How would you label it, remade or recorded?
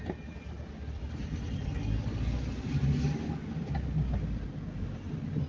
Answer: recorded